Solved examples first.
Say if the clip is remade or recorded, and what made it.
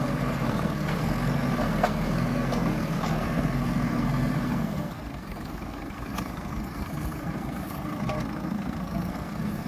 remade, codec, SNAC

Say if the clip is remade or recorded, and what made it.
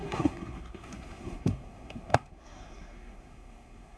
remade, codec, SNAC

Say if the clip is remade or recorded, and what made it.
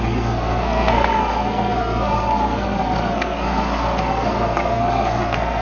remade, codec, SNAC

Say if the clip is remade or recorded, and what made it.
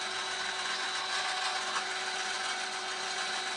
remade, vocoder, Vocos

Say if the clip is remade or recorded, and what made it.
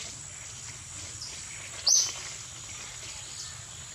recorded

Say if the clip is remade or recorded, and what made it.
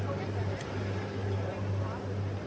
recorded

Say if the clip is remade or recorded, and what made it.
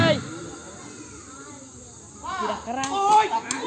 recorded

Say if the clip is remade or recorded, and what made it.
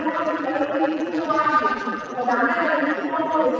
remade, vocoder, BigVGAN v2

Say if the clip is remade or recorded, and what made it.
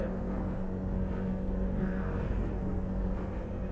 remade, codec, SNAC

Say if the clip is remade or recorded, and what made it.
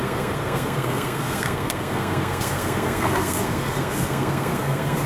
remade, codec, SNAC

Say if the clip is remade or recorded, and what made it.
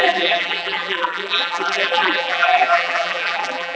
remade, vocoder, BigVGAN v2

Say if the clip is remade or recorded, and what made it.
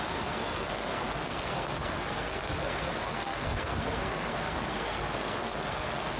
remade, codec, SNAC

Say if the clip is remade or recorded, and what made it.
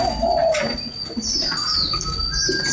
recorded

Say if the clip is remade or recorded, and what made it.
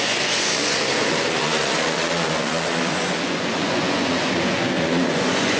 remade, vocoder, Vocos